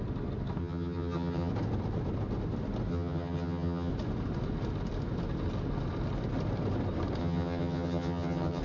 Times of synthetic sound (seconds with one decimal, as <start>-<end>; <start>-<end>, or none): 0.6-1.5; 2.9-3.9; 7.2-8.6